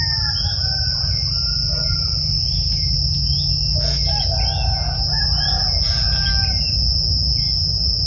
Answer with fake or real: real